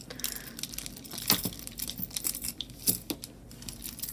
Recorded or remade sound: recorded